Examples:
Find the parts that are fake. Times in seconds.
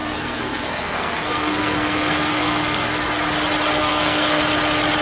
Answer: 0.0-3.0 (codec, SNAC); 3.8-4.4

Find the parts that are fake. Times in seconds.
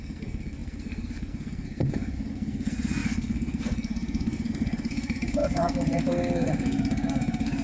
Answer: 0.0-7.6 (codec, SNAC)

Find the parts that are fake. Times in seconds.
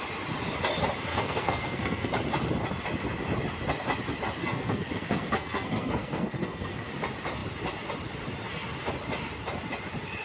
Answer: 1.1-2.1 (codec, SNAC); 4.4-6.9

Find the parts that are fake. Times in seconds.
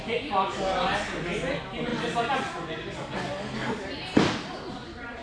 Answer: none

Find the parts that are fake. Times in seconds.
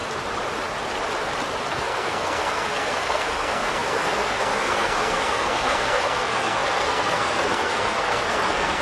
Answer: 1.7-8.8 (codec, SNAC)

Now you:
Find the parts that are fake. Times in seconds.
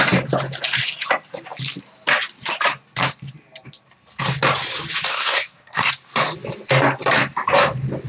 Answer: 5.1-5.9 (codec, SNAC)